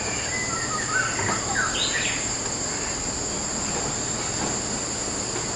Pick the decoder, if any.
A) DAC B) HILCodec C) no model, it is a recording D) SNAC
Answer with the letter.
C